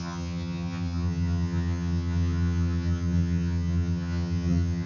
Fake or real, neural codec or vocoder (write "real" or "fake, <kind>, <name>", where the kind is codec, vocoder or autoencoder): fake, vocoder, HiFi-GAN